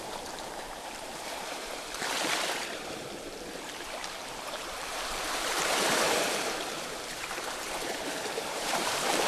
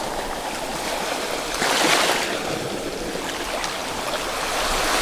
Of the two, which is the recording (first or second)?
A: second